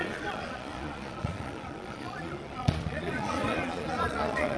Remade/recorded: remade